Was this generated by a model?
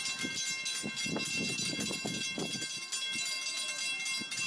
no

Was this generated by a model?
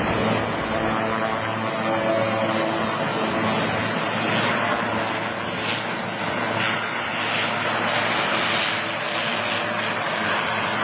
no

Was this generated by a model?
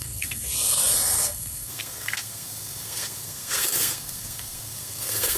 yes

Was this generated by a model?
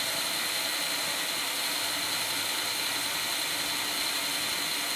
no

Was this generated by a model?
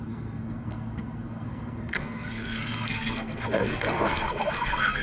yes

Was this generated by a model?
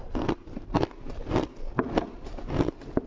no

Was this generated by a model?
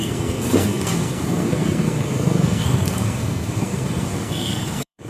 yes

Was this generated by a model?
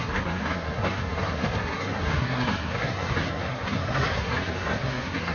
yes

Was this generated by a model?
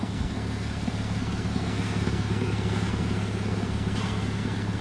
yes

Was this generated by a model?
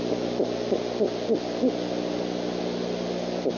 no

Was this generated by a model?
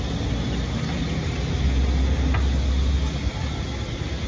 no